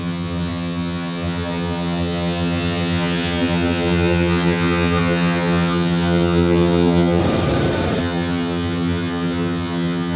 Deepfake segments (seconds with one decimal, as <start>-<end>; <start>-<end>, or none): 0.0-7.2; 8.0-10.2